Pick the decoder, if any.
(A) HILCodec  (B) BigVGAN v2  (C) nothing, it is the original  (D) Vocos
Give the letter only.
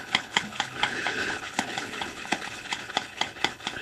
A